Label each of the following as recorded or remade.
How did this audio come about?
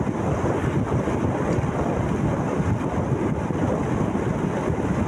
recorded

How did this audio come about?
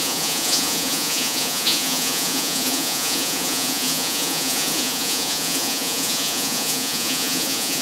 remade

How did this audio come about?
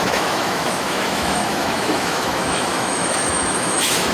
remade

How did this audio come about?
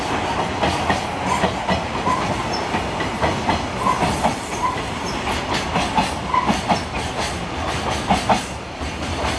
recorded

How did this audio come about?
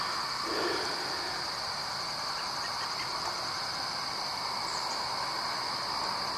recorded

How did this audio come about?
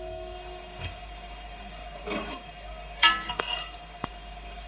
remade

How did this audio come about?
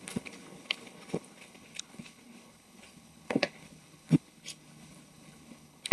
remade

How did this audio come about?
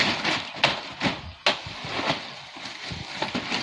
recorded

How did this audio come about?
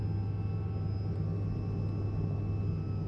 recorded